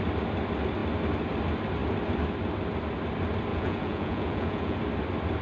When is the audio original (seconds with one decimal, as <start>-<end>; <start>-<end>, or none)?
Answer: 0.0-3.5; 4.8-5.4